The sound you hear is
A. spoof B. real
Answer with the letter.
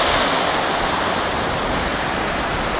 B